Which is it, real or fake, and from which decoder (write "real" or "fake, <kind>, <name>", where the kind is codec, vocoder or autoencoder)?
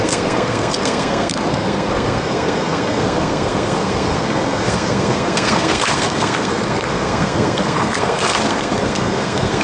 fake, codec, SNAC